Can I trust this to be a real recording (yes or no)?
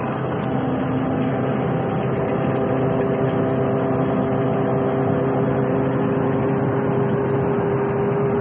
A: yes